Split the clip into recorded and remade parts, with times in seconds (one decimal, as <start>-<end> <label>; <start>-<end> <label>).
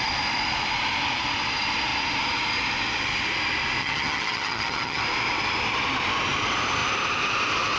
0.0-3.8 recorded; 3.8-5.0 remade; 5.0-7.8 recorded